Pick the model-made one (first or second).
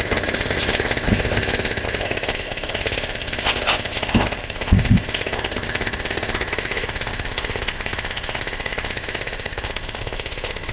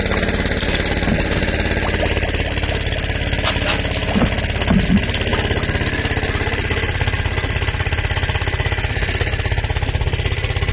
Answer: first